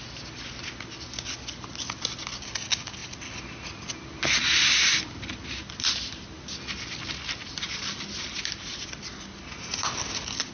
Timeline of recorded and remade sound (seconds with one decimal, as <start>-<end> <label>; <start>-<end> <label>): 0.0-10.5 recorded